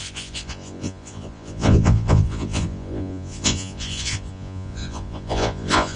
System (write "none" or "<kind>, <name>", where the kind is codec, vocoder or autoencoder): vocoder, Vocos